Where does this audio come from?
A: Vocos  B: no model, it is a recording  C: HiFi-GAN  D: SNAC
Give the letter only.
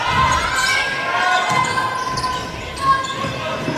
B